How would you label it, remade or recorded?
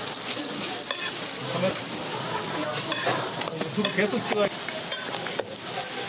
recorded